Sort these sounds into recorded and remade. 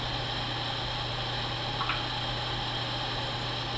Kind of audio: recorded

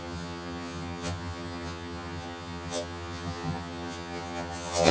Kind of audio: remade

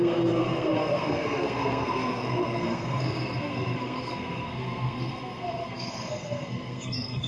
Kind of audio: remade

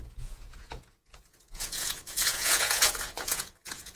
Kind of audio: remade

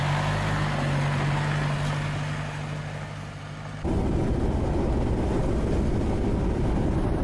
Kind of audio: recorded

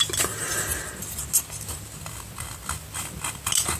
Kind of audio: recorded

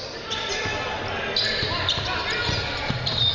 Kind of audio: recorded